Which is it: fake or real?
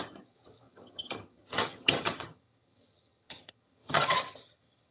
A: fake